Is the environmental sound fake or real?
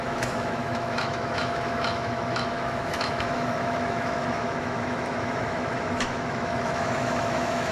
fake